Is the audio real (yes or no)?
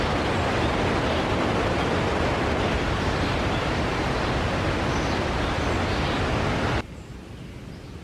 yes